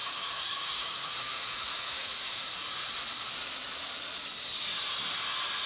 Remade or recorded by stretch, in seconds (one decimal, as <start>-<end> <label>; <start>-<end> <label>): 0.0-2.5 remade; 2.5-5.7 recorded